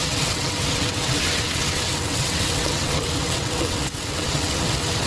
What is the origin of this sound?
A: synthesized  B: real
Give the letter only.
A